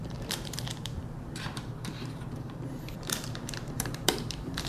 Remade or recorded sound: remade